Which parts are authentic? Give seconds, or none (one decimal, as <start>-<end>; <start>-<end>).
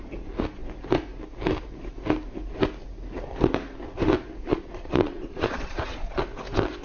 0.0-4.5; 6.2-6.8